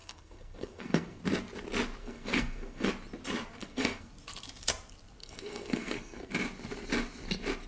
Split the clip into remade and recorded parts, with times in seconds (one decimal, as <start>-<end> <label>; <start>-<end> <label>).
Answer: 0.0-1.2 remade; 1.2-2.0 recorded; 2.0-2.9 remade; 2.9-3.6 recorded; 3.6-4.1 remade; 4.1-5.2 recorded; 5.2-6.3 remade; 6.3-7.7 recorded